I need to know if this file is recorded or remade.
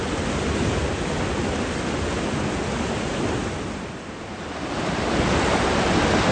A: recorded